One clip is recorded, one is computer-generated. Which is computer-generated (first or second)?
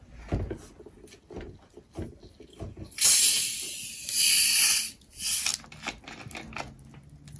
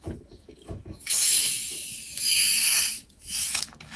second